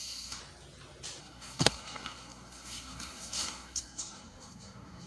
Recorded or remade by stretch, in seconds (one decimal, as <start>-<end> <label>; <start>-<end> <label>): 0.0-0.4 remade; 0.4-1.2 recorded; 1.2-5.1 remade